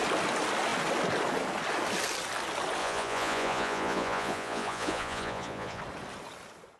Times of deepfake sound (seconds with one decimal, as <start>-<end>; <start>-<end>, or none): 2.8-5.8